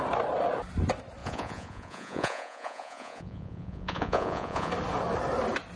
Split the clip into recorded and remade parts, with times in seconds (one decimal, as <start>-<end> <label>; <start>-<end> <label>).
0.0-1.2 recorded; 1.2-4.7 remade; 4.7-5.8 recorded